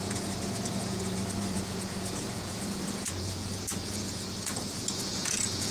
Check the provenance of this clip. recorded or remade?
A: remade